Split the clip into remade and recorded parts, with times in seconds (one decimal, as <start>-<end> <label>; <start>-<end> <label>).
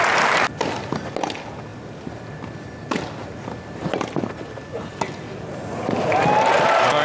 0.0-7.0 recorded